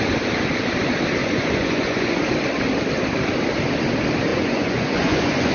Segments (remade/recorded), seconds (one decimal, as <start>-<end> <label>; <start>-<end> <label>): 0.0-1.2 recorded; 1.2-2.2 remade; 2.2-4.3 recorded; 4.3-5.5 remade